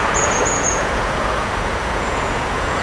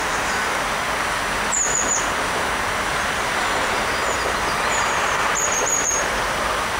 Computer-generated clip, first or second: first